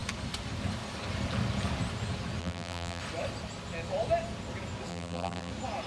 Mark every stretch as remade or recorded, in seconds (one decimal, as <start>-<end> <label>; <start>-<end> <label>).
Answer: 0.0-2.4 recorded; 2.4-3.0 remade; 3.0-4.9 recorded; 4.9-5.5 remade; 5.5-5.9 recorded